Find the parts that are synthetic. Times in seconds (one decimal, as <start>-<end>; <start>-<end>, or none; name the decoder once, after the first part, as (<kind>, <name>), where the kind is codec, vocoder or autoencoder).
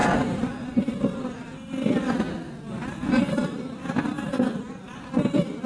none